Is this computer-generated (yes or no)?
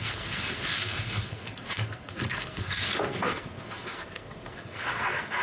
yes